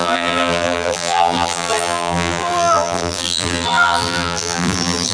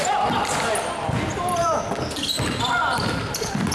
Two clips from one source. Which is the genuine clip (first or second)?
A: second